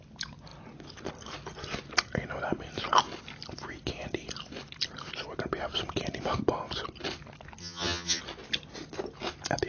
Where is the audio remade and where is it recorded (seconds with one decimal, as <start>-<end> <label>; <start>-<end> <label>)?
0.0-7.6 recorded; 7.6-8.2 remade; 8.2-9.7 recorded